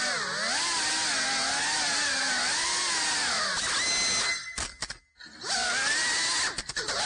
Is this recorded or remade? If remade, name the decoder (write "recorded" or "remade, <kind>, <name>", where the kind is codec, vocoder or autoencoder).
recorded